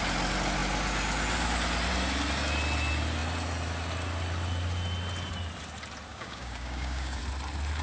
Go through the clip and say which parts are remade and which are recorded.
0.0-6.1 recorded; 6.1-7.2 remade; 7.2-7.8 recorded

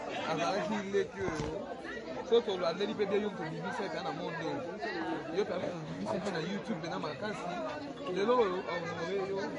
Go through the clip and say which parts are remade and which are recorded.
0.0-5.6 recorded; 5.6-6.3 remade; 6.3-9.6 recorded